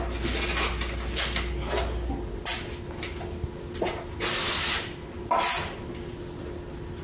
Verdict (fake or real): real